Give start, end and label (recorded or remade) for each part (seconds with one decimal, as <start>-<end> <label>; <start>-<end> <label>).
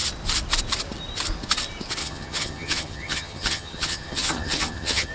0.0-2.0 recorded; 2.0-5.1 remade